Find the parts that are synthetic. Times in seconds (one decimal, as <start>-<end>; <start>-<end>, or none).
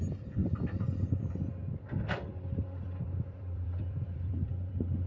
0.4-1.3; 2.3-5.1